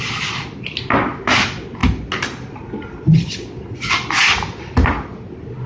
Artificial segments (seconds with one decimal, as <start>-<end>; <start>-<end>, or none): none